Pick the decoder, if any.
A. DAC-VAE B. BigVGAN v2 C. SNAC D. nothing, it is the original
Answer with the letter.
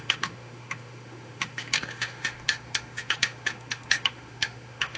A